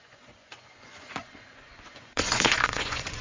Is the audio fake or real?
fake